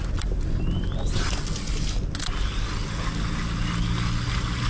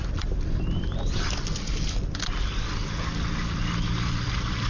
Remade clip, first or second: second